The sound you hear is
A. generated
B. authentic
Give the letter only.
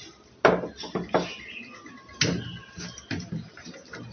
B